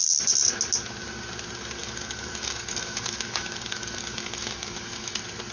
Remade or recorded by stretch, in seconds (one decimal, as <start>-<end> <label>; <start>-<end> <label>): 0.0-1.8 recorded; 1.8-5.1 remade; 5.1-5.5 recorded